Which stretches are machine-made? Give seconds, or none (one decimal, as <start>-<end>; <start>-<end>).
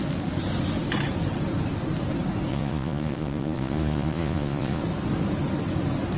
2.5-4.8